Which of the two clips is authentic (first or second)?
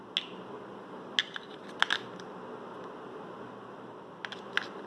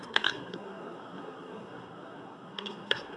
first